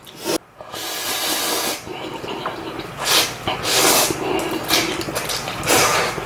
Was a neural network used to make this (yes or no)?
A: no